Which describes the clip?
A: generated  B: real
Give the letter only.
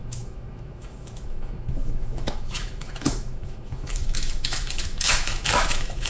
A